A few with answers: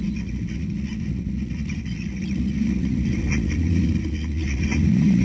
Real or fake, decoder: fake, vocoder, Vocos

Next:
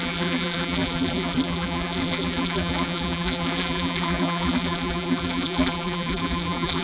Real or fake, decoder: fake, vocoder, BigVGAN v2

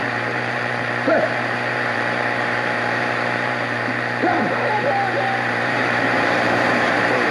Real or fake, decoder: fake, vocoder, BigVGAN v2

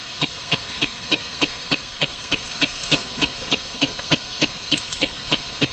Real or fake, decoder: fake, codec, SNAC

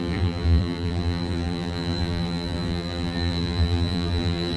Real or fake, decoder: fake, vocoder, BigVGAN v2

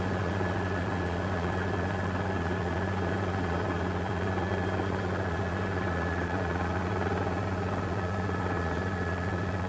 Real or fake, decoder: fake, vocoder, Vocos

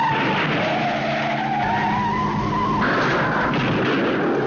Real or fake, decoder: real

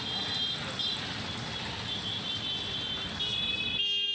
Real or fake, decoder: real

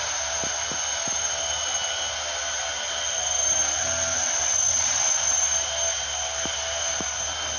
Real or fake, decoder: real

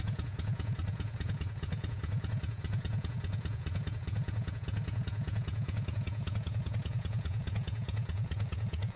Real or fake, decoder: fake, vocoder, Vocos